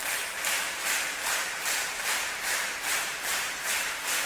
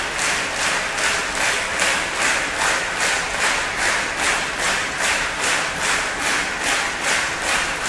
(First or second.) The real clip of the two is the second